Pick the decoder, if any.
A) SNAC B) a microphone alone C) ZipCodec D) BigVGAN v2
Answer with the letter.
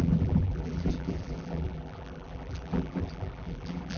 D